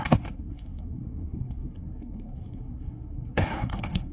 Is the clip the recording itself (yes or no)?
no